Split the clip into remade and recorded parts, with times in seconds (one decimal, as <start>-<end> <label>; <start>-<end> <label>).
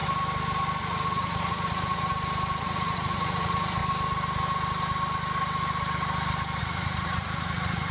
0.0-0.8 recorded; 0.8-2.1 remade; 2.1-2.6 recorded; 2.6-3.8 remade; 3.8-6.6 recorded; 6.6-7.9 remade